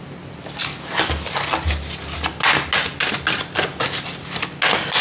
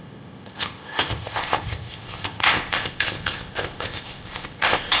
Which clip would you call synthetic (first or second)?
second